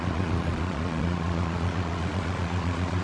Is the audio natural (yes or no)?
no